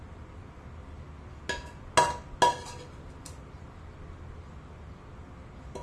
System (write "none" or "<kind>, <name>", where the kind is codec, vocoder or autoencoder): none